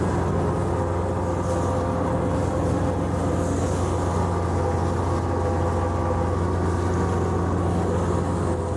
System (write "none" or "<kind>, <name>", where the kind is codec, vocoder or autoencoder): none